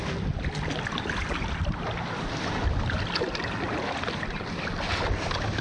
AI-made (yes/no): no